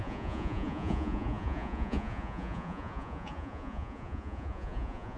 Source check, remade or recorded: remade